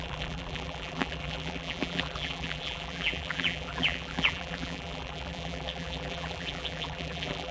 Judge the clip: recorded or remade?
remade